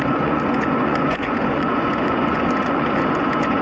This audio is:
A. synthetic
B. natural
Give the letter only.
A